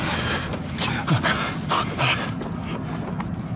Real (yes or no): yes